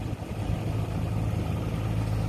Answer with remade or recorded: recorded